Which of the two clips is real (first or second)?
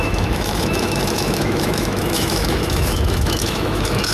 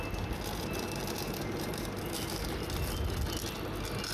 second